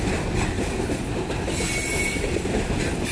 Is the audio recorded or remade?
recorded